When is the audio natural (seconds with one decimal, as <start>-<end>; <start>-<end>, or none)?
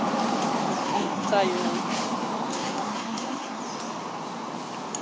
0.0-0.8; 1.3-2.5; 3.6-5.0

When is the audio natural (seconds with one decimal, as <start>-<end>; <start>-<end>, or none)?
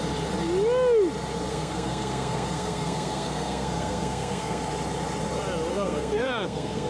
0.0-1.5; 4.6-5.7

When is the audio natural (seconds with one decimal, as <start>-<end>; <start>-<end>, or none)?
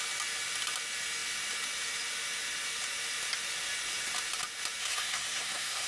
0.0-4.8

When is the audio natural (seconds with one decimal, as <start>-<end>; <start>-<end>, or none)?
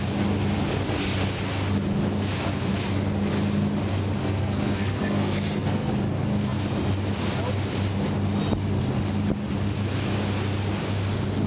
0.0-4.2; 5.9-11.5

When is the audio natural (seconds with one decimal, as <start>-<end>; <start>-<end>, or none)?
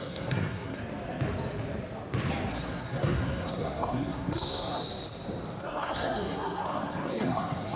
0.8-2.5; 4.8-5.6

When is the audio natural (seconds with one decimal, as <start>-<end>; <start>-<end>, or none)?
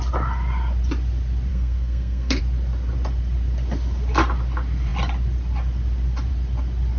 0.0-1.5; 2.4-7.0